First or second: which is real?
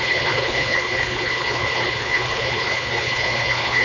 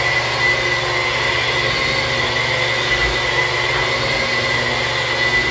second